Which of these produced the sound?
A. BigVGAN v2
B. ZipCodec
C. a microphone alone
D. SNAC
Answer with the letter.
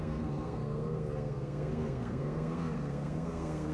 D